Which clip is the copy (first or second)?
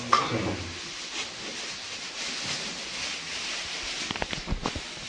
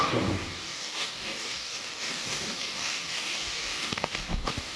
second